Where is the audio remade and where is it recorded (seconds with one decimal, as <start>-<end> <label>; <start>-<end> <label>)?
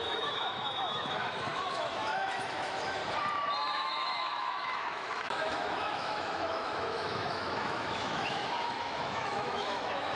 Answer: 0.0-3.0 remade; 3.0-3.7 recorded; 3.7-10.2 remade